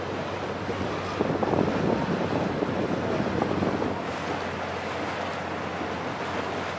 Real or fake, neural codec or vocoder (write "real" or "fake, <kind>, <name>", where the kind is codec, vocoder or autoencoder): real